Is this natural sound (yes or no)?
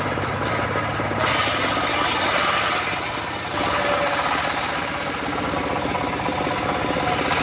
yes